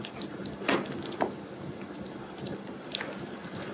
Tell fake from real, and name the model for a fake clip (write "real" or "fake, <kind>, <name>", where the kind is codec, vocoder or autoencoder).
real